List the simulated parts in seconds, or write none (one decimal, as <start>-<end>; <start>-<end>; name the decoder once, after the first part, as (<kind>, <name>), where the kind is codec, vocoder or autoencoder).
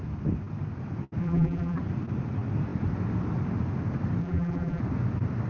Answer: 1.2-1.8 (vocoder, BigVGAN v2); 4.2-4.8